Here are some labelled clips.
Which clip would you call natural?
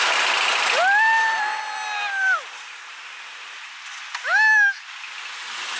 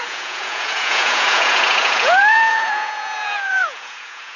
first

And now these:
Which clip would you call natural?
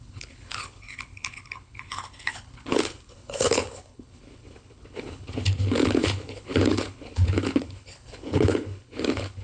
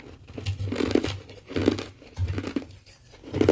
second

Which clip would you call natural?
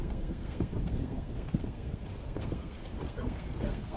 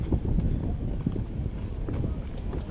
second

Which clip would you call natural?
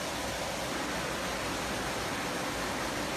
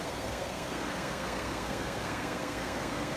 first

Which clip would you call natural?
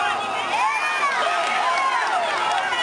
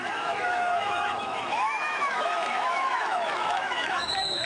first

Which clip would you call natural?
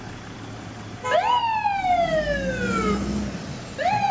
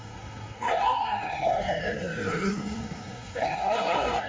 first